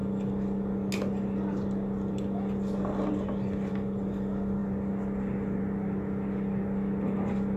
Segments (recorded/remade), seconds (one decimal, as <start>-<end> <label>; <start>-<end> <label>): 0.0-7.6 recorded